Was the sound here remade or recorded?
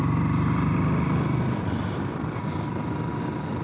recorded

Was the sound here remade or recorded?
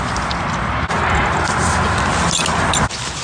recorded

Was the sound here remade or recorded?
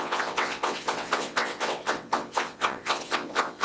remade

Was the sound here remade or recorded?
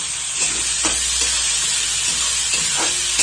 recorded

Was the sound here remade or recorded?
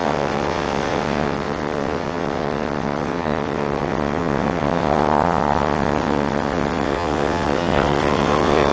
remade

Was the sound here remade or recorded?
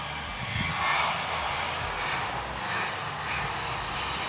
recorded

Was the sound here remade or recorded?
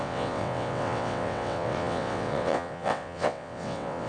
remade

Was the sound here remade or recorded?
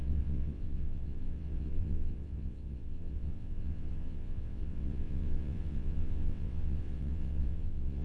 remade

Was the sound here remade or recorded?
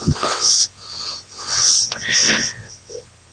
remade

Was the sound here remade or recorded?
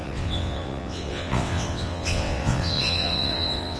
remade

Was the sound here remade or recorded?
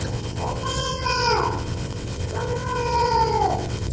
remade